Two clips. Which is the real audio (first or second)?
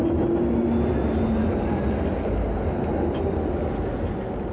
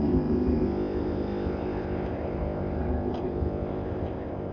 first